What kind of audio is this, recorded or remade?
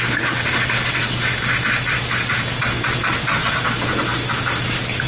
recorded